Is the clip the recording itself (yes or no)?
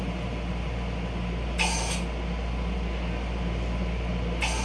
yes